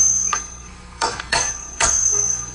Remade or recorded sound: remade